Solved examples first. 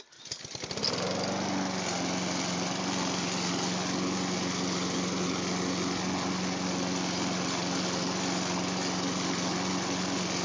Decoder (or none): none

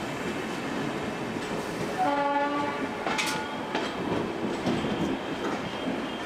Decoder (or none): none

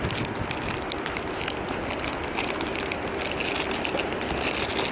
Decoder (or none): none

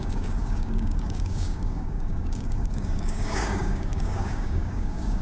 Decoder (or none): codec, DAC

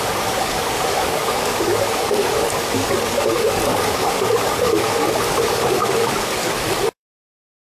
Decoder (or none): codec, DAC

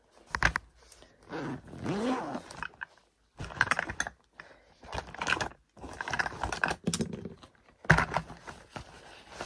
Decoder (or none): none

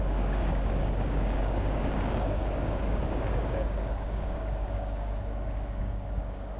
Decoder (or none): codec, DAC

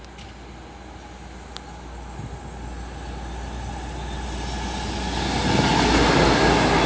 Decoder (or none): none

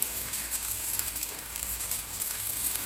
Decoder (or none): codec, DAC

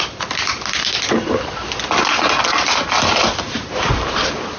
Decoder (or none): none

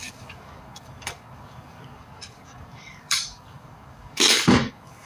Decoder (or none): codec, DAC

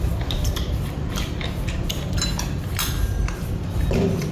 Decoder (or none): none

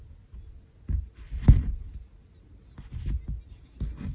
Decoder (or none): none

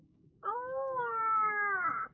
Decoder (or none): codec, DAC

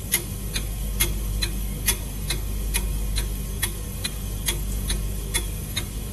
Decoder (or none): codec, DAC